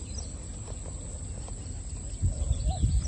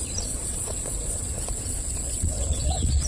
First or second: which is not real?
second